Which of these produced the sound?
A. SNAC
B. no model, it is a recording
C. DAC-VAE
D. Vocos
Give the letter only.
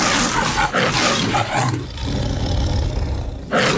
B